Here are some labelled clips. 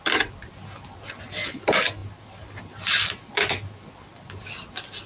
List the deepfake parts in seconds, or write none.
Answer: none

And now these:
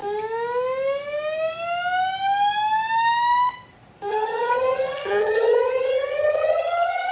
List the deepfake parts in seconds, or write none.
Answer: 4.1-7.1 (vocoder, HiFi-GAN)

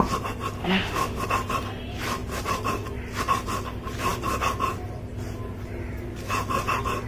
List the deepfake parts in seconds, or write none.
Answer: 0.6-1.2 (autoencoder, DAC-VAE)

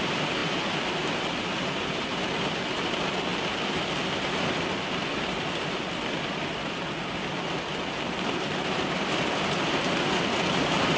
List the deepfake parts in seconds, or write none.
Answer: 0.4-0.9 (vocoder, BigVGAN v2); 3.3-7.7

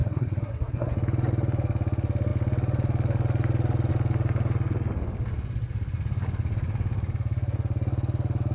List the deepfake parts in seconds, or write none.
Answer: 0.0-0.9 (codec, SNAC)

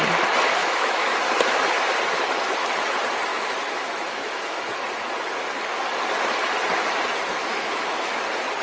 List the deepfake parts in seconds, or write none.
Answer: 0.6-1.7 (autoencoder, DAC-VAE); 3.3-4.7; 7.4-8.2